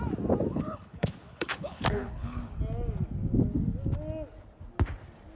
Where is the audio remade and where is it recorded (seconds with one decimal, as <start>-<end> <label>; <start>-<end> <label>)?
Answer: 0.0-0.5 recorded; 0.5-2.6 remade; 2.6-5.3 recorded